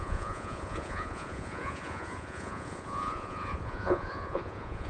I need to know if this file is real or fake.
fake